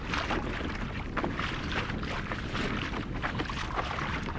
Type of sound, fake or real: real